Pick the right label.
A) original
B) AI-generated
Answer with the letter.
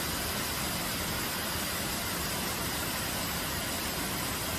A